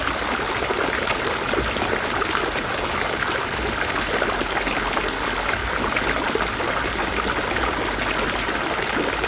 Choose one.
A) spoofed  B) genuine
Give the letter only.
B